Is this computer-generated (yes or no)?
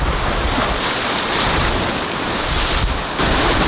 no